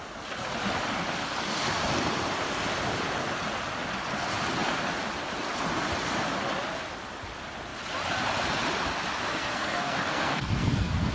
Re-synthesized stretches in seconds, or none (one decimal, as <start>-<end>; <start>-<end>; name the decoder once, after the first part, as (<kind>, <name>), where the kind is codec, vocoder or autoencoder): 9.3-11.1 (codec, SNAC)